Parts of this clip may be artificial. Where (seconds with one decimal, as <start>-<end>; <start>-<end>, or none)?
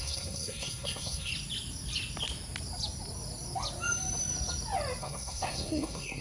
0.0-1.3; 5.0-6.2